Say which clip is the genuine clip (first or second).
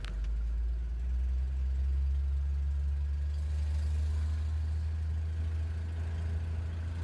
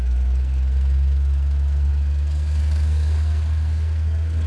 first